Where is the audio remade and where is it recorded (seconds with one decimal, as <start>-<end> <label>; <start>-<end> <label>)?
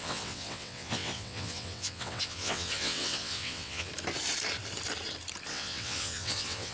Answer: 0.0-3.9 remade; 3.9-5.5 recorded; 5.5-6.7 remade